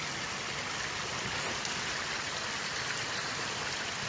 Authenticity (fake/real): real